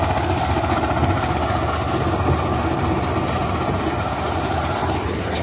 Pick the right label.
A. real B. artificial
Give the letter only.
A